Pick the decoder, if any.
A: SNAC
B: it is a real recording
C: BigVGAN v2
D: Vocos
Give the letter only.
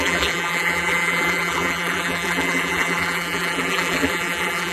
C